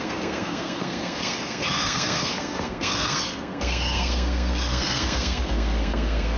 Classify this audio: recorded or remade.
remade